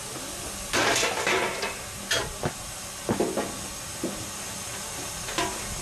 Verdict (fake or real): real